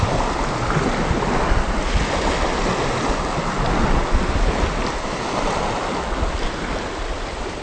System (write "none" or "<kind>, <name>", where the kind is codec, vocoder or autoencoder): none